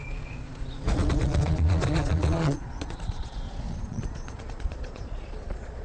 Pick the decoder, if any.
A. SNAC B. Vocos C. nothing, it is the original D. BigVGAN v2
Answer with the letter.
B